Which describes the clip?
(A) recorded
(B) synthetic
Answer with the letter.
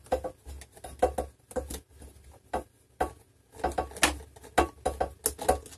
A